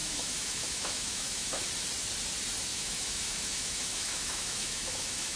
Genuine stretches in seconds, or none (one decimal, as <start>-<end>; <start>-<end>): 1.6-2.7